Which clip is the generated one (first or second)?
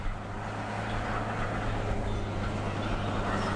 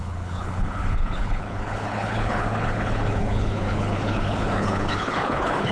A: second